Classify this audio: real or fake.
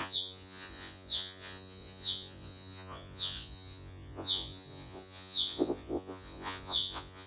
fake